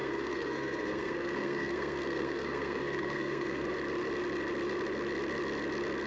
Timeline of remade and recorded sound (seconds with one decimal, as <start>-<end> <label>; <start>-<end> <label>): 0.0-3.7 remade; 3.7-6.1 recorded